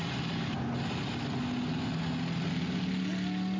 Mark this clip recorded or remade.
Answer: recorded